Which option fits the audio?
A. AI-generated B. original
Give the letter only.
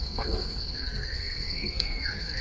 A